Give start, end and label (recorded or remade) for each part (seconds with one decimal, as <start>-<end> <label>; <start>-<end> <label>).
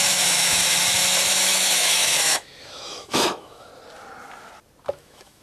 0.0-0.6 remade; 0.6-1.4 recorded; 1.4-3.7 remade; 3.7-4.9 recorded; 4.9-5.4 remade